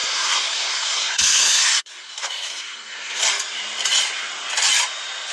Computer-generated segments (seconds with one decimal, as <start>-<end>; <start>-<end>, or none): 0.0-3.2